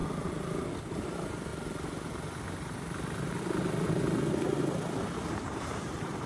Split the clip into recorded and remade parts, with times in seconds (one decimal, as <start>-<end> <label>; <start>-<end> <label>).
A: 0.0-0.9 recorded; 0.9-1.5 remade; 1.5-5.3 recorded; 5.3-6.3 remade